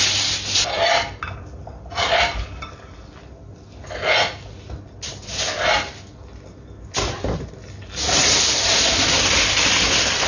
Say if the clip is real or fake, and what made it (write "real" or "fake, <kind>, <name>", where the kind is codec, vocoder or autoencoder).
real